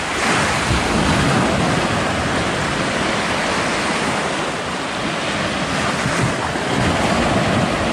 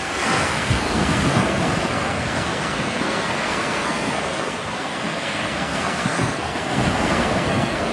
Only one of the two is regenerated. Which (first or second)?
second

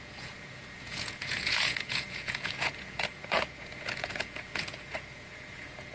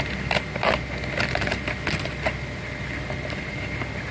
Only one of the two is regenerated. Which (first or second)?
first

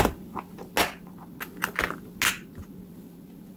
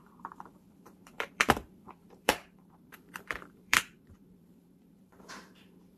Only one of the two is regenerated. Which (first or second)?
second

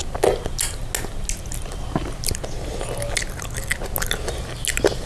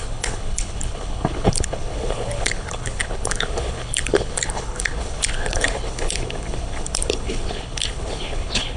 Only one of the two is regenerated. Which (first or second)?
second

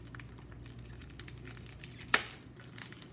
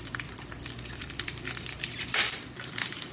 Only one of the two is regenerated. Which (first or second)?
second